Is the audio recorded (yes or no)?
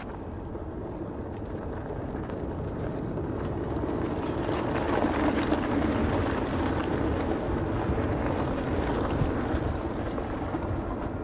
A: yes